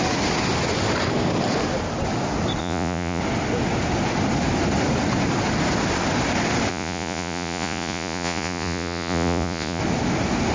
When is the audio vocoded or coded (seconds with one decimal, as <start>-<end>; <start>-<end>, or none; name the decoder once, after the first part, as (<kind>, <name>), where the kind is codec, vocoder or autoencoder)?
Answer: 2.6-3.2 (vocoder, Vocos); 6.7-9.8